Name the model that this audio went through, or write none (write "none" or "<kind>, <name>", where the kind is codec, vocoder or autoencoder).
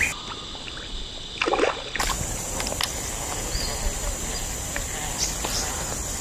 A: none